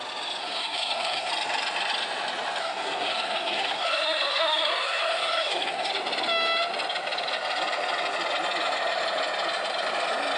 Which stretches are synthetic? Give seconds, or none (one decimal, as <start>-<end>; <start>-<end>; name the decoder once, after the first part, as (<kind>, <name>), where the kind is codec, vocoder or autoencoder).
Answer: 0.4-1.3 (codec, SNAC); 2.6-5.9